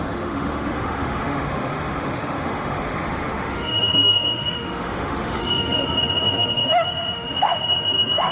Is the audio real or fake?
fake